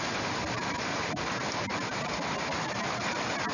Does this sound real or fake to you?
real